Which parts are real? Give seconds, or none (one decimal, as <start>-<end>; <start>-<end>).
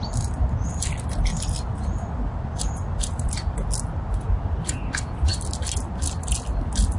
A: 0.0-7.0